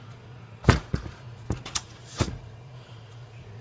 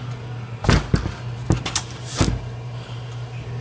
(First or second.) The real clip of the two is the second